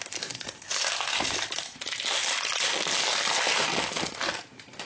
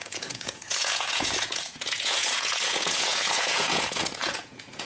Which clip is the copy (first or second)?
second